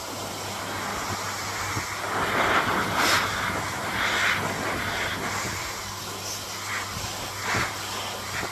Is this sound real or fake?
real